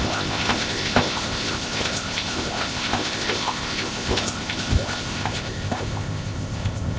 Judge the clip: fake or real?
fake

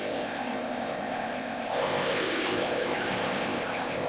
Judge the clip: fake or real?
fake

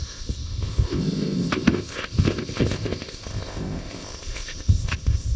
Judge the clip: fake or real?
fake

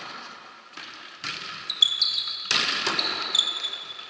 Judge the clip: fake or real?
real